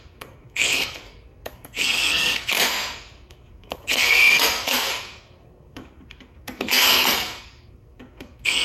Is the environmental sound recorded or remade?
remade